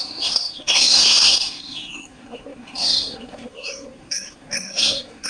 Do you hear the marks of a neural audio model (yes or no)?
yes